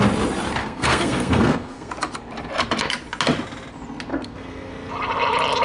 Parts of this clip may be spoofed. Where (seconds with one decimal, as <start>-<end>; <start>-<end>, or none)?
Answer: 0.6-1.9; 4.1-4.7